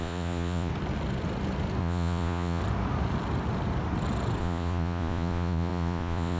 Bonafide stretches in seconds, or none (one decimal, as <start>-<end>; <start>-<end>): 0.7-1.8; 2.6-4.4